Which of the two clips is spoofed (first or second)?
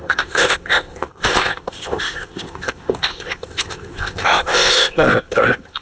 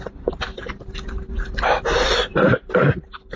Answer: first